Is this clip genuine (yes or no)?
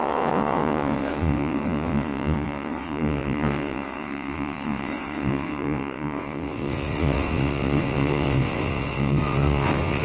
no